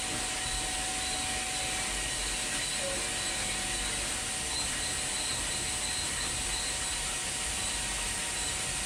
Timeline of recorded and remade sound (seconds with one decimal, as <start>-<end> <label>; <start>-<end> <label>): 0.0-8.9 recorded

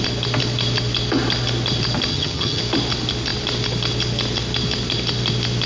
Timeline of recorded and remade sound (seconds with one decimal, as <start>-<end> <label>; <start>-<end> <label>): 0.0-2.1 recorded; 2.1-2.6 remade; 2.6-5.7 recorded

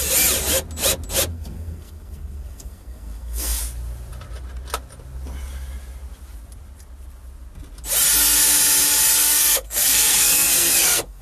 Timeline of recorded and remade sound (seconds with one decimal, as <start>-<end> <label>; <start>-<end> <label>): 0.0-1.3 recorded; 1.3-3.6 remade; 3.6-9.2 recorded; 9.2-11.2 remade

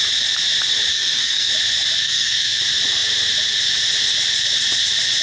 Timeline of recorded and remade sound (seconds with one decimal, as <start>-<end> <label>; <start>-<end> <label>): 0.0-0.9 recorded; 0.9-1.5 remade; 1.5-2.0 recorded; 2.0-2.6 remade; 2.6-5.2 recorded

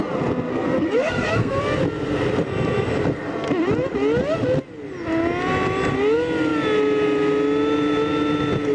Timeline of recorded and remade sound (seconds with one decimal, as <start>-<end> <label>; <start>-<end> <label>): 0.0-0.5 recorded; 0.5-1.6 remade; 1.6-8.7 recorded

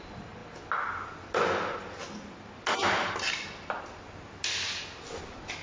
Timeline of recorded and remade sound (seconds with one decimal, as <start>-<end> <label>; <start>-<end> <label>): 0.0-5.6 recorded

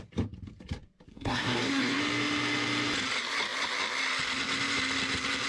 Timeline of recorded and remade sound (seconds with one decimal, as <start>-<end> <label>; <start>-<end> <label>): 0.0-1.1 recorded; 1.1-2.0 remade; 2.0-5.5 recorded

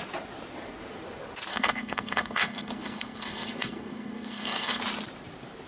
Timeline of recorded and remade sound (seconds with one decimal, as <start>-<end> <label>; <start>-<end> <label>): 0.0-1.5 recorded; 1.5-4.8 remade; 4.8-5.7 recorded